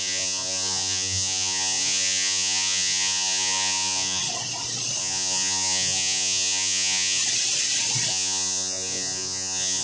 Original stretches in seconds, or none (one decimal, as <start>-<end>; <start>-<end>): 4.2-5.0; 7.2-8.1